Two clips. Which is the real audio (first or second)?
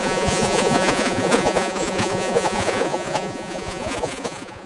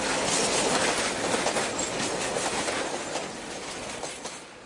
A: second